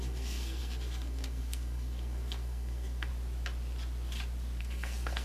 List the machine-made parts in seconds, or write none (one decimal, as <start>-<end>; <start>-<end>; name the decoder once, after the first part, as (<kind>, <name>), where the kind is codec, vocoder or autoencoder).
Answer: 0.0-3.1 (codec, SNAC); 4.6-5.2